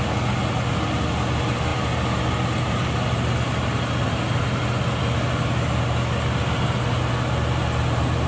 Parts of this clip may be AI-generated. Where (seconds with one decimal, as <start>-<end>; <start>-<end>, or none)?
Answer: none